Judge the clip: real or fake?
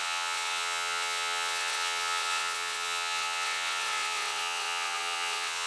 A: fake